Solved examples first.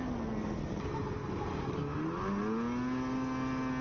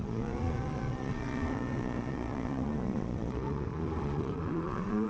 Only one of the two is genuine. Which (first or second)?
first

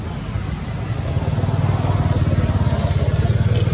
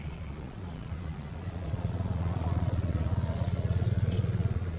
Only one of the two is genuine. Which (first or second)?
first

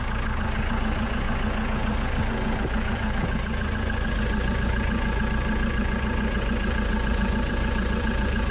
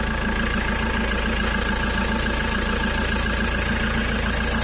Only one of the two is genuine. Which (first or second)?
second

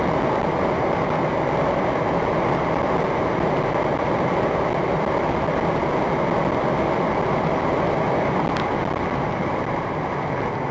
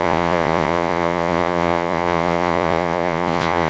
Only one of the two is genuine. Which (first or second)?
first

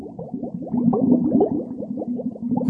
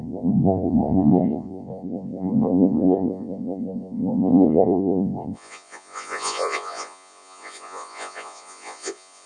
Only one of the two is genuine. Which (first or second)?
first